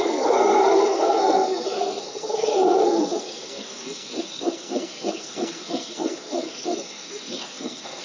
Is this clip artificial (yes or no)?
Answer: yes